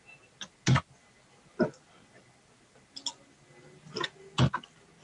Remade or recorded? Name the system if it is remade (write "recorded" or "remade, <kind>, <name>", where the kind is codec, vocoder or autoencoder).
recorded